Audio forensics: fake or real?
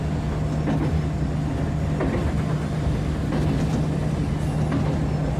real